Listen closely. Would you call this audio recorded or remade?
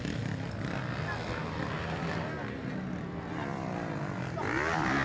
recorded